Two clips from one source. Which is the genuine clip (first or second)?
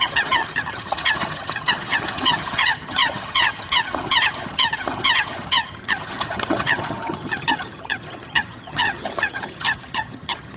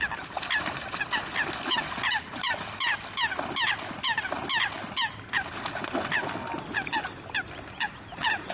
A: second